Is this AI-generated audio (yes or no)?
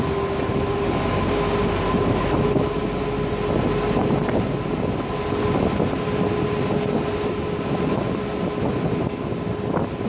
no